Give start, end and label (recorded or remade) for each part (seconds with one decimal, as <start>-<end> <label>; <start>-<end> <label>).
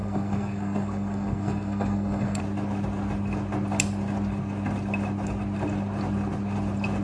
0.0-2.4 remade; 2.4-7.0 recorded